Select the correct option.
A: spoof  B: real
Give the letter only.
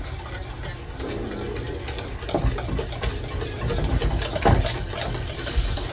B